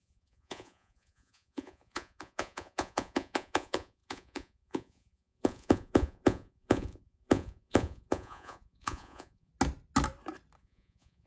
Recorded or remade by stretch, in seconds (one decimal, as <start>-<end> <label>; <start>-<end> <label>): 0.0-9.5 remade; 9.5-10.6 recorded; 10.6-11.3 remade